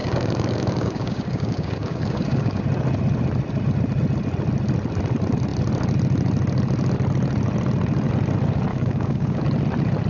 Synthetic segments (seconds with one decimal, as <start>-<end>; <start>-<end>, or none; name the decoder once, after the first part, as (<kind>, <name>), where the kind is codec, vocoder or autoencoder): 0.0-2.6 (codec, DAC); 8.7-9.4